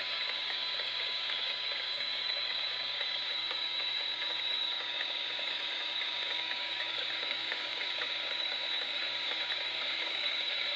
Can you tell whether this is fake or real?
fake